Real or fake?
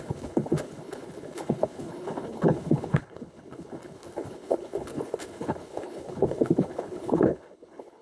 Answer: fake